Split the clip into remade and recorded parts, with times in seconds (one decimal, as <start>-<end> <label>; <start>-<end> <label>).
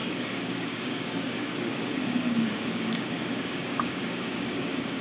0.0-5.0 remade